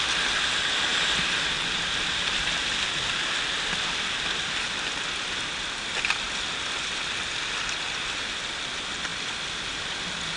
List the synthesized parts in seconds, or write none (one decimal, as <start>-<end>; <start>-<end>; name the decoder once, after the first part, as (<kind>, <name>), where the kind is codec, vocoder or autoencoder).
0.9-1.9 (vocoder, BigVGAN v2)